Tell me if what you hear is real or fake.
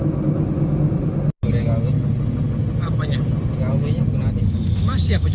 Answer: real